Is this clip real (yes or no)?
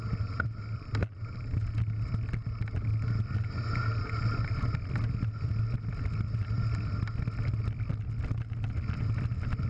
yes